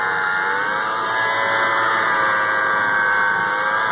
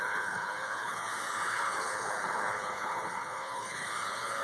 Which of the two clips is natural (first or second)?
first